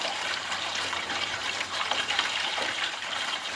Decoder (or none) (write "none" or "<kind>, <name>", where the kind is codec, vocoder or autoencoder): vocoder, BigVGAN v2